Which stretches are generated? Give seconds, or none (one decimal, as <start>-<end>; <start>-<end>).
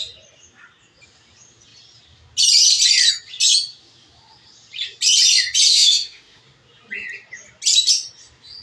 5.7-6.4